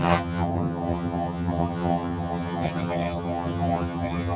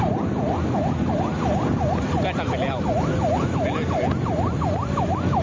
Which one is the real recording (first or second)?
second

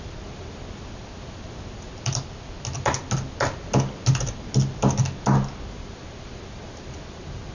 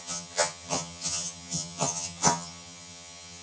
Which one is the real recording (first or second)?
first